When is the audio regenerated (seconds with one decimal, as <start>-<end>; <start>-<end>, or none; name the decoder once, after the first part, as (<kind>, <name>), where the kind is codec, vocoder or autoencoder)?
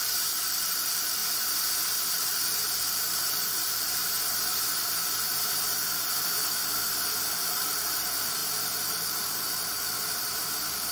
0.0-1.2 (vocoder, BigVGAN v2); 2.1-4.0; 7.3-10.9